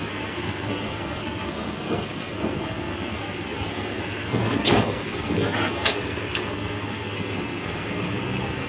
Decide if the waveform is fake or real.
fake